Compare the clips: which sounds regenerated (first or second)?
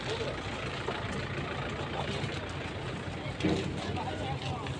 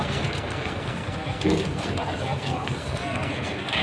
second